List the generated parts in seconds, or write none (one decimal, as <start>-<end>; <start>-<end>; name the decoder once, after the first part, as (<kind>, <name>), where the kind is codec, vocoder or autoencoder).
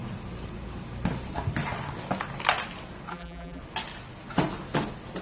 3.1-3.6 (vocoder, BigVGAN v2)